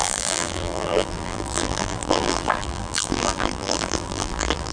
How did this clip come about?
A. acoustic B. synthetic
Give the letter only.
B